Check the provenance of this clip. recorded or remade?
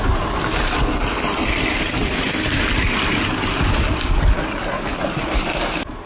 recorded